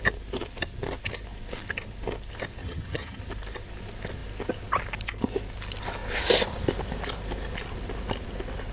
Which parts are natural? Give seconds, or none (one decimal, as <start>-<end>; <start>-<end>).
0.0-2.6; 3.2-8.7